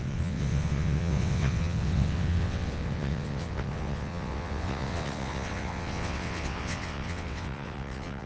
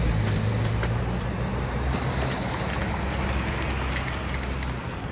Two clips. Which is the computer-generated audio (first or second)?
first